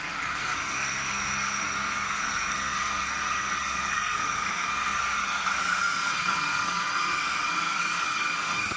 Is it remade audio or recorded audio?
remade